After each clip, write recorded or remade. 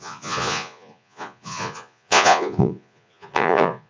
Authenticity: remade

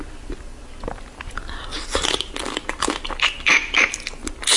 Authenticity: recorded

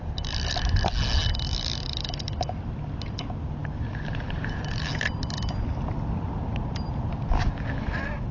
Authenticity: recorded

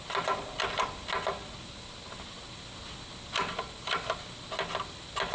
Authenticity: recorded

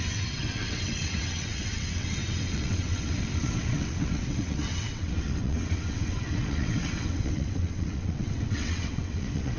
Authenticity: remade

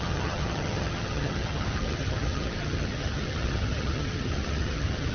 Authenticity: remade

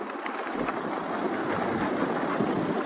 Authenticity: recorded